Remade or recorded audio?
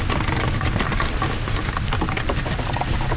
recorded